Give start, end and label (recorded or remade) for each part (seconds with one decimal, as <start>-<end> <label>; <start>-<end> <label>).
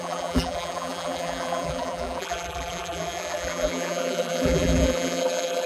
0.0-5.7 remade